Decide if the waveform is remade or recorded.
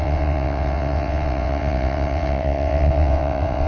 remade